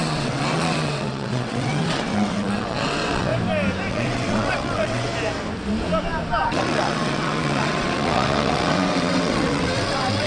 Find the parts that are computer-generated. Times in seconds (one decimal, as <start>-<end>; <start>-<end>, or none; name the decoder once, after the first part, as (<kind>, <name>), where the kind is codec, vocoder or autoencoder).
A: 0.0-3.3 (vocoder, WaveNeXt); 3.9-5.1; 6.4-10.3